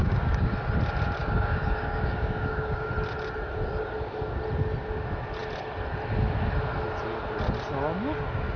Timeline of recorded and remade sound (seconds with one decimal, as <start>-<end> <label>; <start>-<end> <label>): 0.0-0.5 remade; 0.5-1.2 recorded; 1.2-2.9 remade; 2.9-8.6 recorded